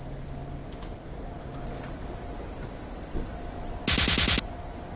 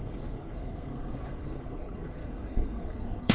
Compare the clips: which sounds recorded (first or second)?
first